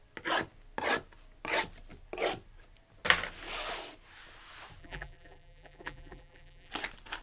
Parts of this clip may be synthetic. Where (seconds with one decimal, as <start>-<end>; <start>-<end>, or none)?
4.8-6.7